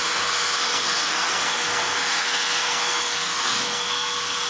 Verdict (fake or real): fake